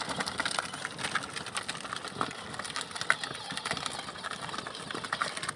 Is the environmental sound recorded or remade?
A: recorded